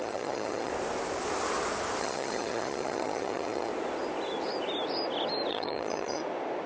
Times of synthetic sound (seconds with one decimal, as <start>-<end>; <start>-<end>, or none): 0.0-0.7; 2.0-3.7; 5.5-6.2